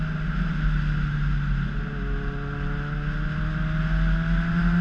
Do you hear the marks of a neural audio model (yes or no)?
no